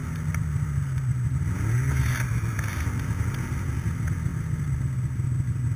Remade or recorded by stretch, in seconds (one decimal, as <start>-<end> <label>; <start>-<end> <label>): 0.0-5.8 recorded